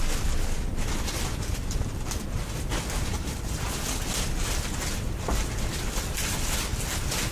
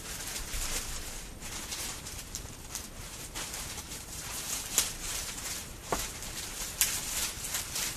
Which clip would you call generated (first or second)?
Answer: second